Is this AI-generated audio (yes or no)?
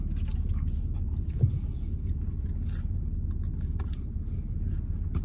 no